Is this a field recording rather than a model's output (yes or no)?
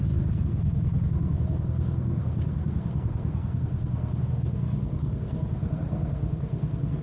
no